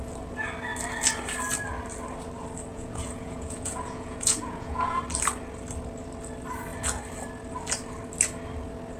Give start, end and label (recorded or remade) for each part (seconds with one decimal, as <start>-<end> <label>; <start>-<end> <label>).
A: 0.0-2.7 recorded; 2.7-5.0 remade; 5.0-9.0 recorded